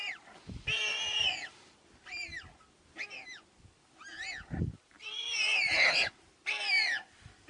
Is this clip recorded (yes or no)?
no